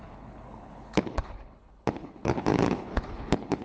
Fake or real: fake